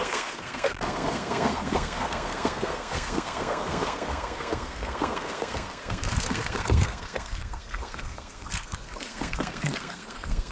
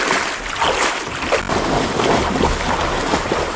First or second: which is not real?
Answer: first